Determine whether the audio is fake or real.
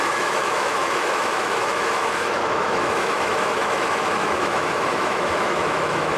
fake